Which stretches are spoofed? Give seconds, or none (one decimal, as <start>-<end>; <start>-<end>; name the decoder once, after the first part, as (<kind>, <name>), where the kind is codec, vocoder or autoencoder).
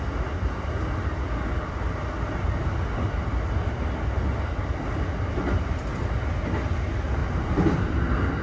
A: 7.2-8.4 (vocoder, BigVGAN v2)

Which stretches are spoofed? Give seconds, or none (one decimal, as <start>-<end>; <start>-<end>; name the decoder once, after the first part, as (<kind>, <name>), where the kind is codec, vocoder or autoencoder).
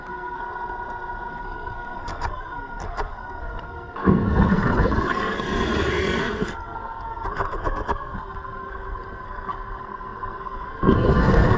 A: 0.0-0.4 (codec, SNAC); 1.3-11.6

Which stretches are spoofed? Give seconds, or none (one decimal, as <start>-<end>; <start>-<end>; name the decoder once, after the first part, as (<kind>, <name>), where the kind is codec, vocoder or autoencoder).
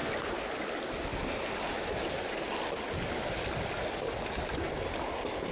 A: none